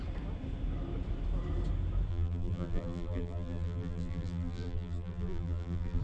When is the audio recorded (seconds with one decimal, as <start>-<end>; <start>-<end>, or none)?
0.0-2.1